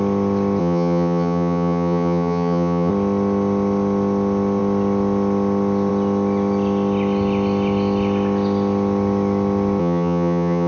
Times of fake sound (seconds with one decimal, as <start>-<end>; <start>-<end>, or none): 0.6-2.9; 9.8-10.7